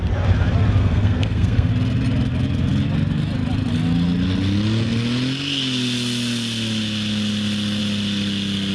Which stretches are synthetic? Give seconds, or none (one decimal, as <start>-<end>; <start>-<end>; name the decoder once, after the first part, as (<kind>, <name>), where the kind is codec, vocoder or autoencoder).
0.8-1.7 (codec, SNAC)

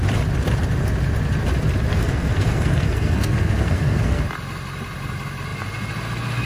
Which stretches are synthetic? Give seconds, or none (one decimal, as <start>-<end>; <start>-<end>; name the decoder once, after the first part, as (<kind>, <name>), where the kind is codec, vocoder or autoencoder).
1.9-4.2 (codec, SNAC)

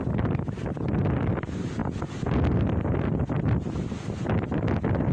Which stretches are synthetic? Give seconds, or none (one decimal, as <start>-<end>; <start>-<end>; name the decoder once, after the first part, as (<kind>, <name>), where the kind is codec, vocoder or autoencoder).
none

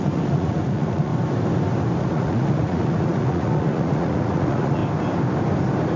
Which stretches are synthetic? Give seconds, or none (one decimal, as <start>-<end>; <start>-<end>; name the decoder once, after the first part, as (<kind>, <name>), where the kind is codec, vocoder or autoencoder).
0.0-1.1 (vocoder, Vocos); 2.0-4.8